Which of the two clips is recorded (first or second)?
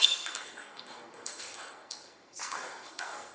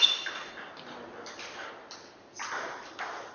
second